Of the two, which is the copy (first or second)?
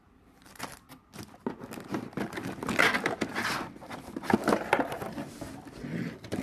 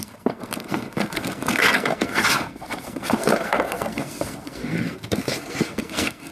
second